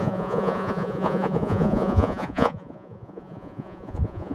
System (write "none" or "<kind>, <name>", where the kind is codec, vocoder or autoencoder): vocoder, Vocos